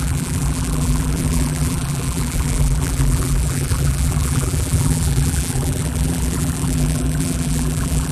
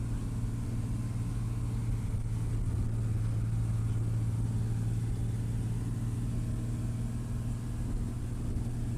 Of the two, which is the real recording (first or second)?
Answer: second